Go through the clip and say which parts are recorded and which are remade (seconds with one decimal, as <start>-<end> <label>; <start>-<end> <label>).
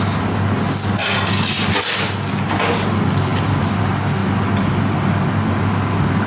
0.0-6.3 recorded